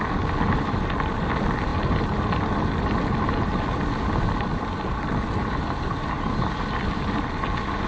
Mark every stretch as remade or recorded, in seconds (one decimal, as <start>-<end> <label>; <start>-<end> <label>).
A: 0.0-7.9 recorded